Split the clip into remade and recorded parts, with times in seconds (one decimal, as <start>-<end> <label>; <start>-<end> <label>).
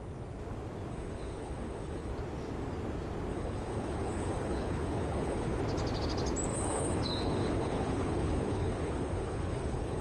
0.0-0.9 recorded; 0.9-2.1 remade; 2.1-3.3 recorded; 3.3-5.6 remade; 5.6-6.5 recorded; 6.5-10.0 remade